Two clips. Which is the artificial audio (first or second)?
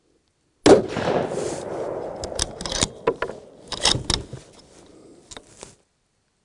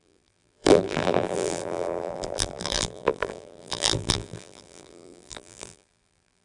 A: second